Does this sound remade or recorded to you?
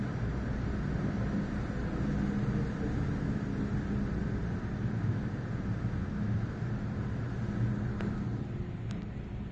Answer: recorded